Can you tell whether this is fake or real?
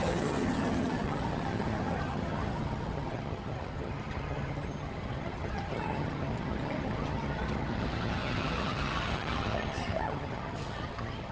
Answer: fake